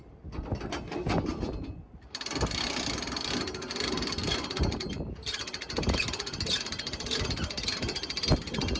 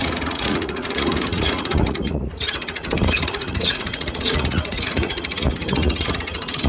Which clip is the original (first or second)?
first